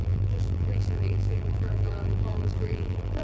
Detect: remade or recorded remade